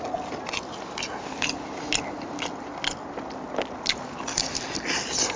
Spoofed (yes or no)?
no